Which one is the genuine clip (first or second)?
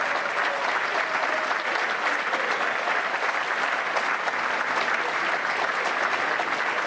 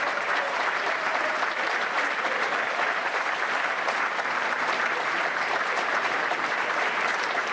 first